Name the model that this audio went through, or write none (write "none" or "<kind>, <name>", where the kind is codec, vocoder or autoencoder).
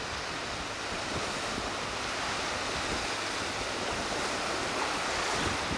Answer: none